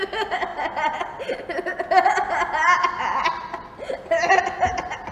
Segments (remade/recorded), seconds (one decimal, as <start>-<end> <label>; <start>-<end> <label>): 0.0-5.1 recorded